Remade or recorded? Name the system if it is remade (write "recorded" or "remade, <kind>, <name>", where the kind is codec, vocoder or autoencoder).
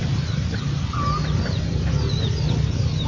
recorded